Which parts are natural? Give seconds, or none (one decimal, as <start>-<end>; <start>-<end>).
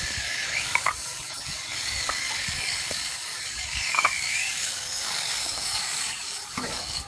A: none